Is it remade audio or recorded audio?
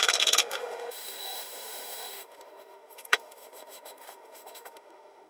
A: remade